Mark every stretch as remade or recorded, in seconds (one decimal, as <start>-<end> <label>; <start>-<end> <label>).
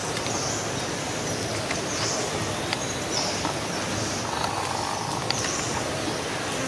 0.0-0.8 recorded; 0.8-2.8 remade; 2.8-6.7 recorded